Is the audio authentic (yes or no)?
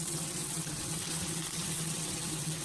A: no